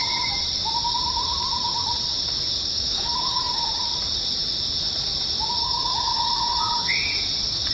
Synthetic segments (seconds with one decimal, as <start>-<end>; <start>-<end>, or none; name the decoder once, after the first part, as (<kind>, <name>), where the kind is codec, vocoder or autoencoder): 2.7-3.4 (autoencoder, DAC-VAE); 5.6-6.9